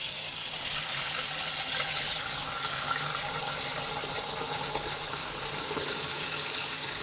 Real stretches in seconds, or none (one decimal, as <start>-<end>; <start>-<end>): 0.4-1.9; 3.1-4.7